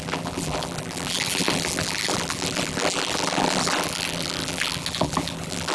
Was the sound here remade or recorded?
remade